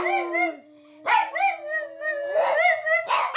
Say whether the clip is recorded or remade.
recorded